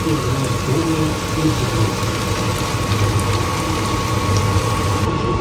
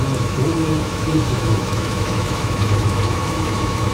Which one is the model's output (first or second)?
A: second